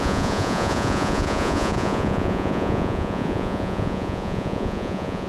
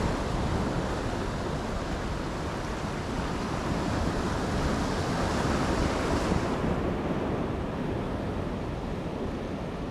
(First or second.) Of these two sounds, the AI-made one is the first